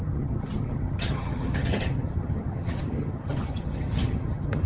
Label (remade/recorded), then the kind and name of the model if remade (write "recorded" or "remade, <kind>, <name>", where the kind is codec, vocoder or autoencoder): remade, vocoder, HiFi-GAN